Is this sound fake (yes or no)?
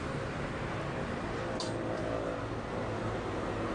no